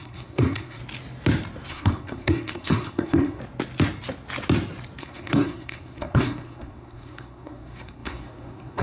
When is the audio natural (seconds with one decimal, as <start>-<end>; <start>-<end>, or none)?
0.8-1.7; 3.4-5.0